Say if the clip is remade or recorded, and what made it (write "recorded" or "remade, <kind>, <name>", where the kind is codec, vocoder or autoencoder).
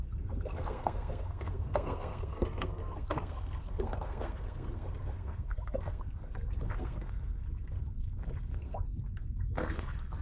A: remade, codec, SNAC